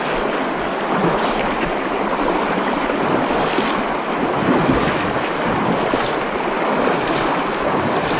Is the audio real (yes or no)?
yes